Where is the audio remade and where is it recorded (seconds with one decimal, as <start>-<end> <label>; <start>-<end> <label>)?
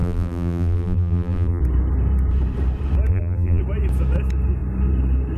0.0-1.6 remade; 1.6-3.1 recorded; 3.1-3.6 remade; 3.6-5.4 recorded